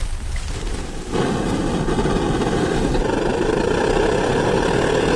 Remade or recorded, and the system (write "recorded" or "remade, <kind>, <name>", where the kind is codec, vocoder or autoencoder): recorded